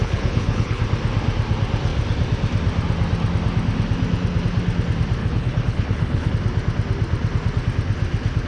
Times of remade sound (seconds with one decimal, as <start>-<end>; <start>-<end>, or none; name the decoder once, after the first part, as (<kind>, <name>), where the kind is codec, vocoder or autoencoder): 0.0-0.8 (codec, HILCodec); 5.2-6.3